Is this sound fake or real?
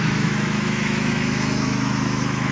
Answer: fake